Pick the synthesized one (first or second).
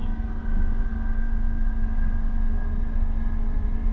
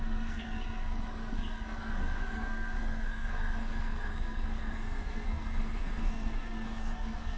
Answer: second